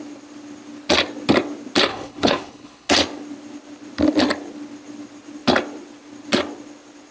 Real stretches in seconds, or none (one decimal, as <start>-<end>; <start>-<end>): 0.0-1.9; 2.9-7.1